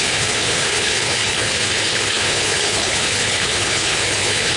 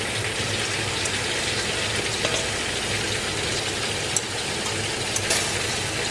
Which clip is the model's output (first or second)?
first